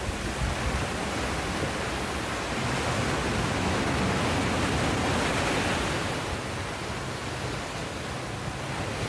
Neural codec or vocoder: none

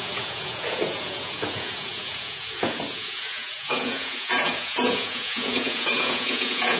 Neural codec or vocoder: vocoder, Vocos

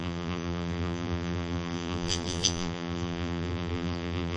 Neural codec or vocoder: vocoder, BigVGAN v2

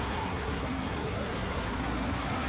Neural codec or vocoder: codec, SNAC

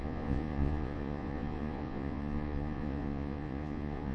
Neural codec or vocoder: vocoder, Vocos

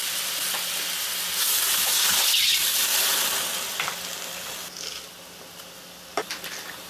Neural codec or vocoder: none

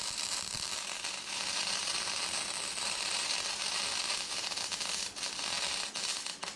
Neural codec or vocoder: none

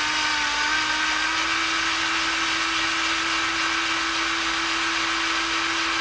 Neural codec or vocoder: none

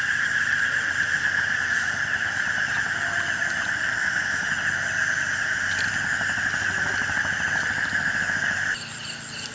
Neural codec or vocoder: none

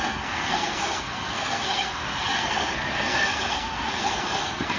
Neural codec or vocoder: codec, SNAC